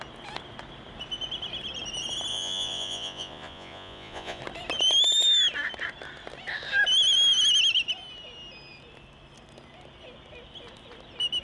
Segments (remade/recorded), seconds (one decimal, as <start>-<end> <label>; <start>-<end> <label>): 0.0-2.3 recorded; 2.3-4.4 remade; 4.4-11.4 recorded